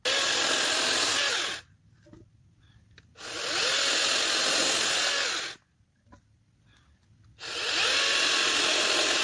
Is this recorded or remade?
recorded